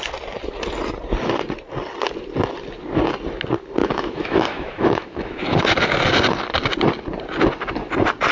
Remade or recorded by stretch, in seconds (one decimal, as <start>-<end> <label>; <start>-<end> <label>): 0.0-3.8 recorded; 3.8-5.6 remade; 5.6-8.3 recorded